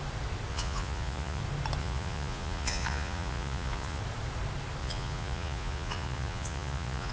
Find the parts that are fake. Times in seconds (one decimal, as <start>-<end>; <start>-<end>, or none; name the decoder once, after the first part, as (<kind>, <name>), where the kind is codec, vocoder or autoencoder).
0.5-1.4 (vocoder, Vocos); 1.8-4.0; 4.8-7.1